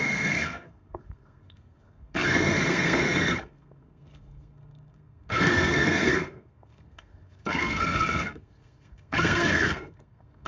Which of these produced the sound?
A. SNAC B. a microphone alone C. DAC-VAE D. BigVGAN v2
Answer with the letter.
A